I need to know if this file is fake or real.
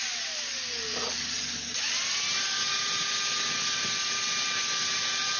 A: real